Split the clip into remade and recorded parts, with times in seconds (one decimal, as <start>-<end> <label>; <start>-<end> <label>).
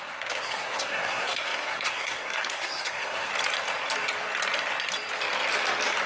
0.0-3.3 remade; 3.3-6.1 recorded